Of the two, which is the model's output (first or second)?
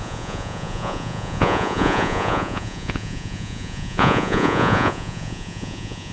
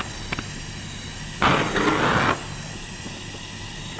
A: first